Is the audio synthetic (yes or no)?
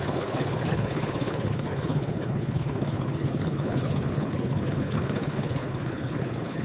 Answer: yes